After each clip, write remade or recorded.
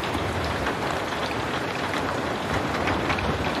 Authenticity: remade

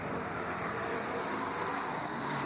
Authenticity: remade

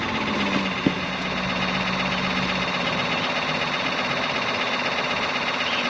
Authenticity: recorded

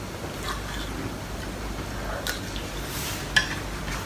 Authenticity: recorded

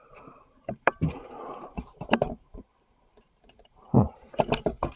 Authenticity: remade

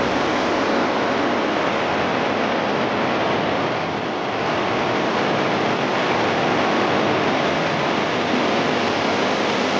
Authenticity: recorded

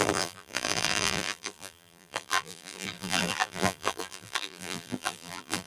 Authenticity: remade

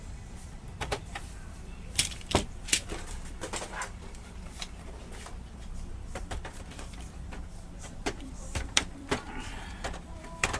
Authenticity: remade